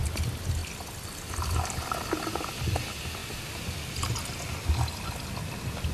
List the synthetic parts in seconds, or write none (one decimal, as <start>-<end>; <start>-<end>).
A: none